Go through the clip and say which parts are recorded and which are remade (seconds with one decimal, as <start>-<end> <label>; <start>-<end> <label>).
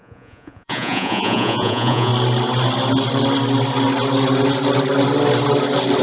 0.0-2.1 remade; 2.1-6.0 recorded